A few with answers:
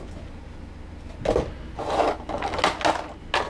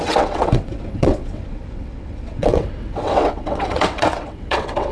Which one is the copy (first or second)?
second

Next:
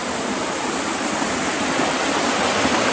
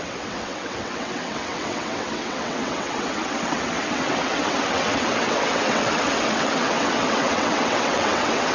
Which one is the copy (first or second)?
second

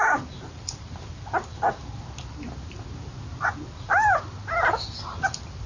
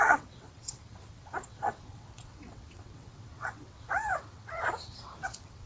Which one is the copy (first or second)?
second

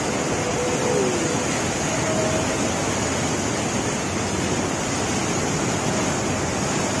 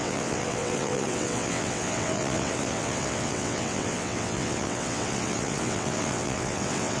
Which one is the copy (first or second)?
second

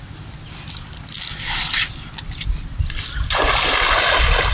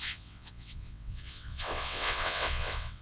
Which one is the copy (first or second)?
second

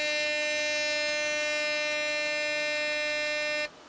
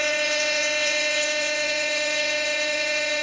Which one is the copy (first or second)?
second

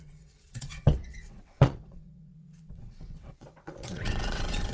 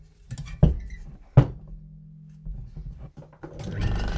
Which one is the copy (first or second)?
first